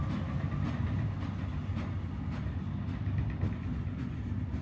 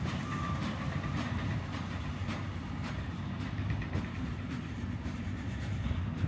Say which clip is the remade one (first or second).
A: second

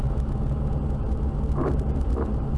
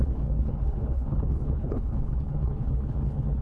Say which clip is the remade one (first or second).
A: second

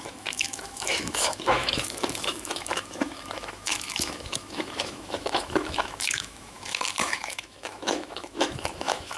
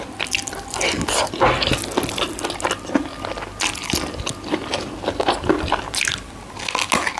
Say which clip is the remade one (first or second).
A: first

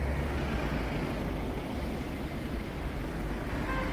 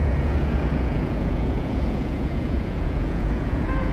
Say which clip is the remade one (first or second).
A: second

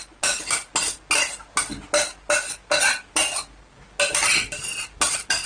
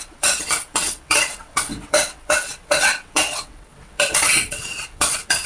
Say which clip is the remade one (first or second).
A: second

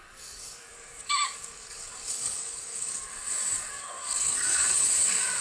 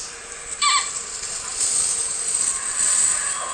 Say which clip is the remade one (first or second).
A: first